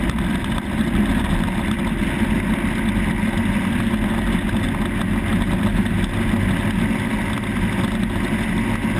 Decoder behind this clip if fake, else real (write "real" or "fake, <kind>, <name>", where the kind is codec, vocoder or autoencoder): real